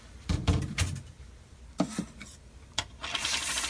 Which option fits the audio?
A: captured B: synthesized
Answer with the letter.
A